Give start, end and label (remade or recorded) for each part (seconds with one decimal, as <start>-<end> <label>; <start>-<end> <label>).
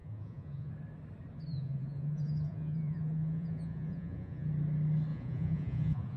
0.0-0.7 remade; 0.7-1.5 recorded; 1.5-4.5 remade; 4.5-5.1 recorded; 5.1-6.2 remade